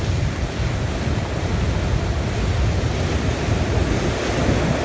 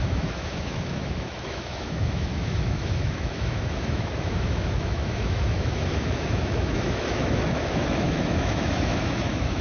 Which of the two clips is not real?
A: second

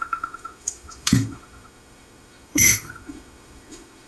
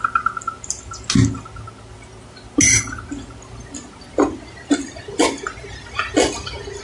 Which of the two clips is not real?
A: first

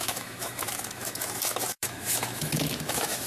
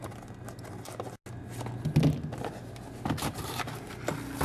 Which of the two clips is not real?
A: first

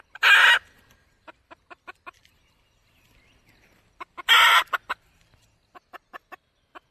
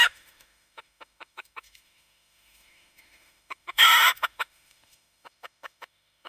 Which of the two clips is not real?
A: second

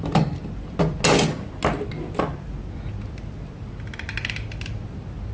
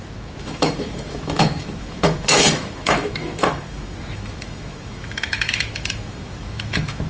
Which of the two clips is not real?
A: second